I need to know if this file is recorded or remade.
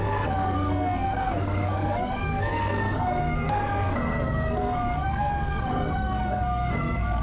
remade